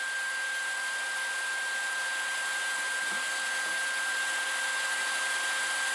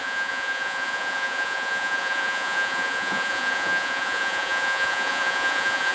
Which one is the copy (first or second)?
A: second